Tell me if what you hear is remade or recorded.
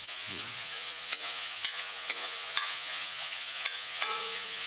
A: remade